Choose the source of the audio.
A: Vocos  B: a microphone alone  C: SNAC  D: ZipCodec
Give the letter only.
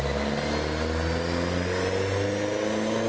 B